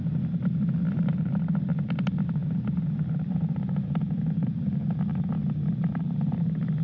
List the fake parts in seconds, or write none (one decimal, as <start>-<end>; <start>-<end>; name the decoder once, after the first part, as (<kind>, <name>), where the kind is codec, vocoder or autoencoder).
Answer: 0.9-2.4 (vocoder, BigVGAN v2); 3.1-5.4; 6.0-6.8